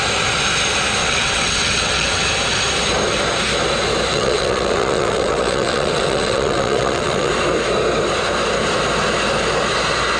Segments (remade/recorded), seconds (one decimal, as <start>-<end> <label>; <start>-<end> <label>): 0.0-1.0 recorded; 1.0-2.3 remade; 2.3-4.1 recorded; 4.1-7.3 remade; 7.3-10.2 recorded